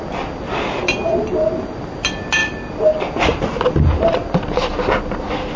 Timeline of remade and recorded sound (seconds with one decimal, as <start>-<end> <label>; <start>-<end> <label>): 0.0-5.6 recorded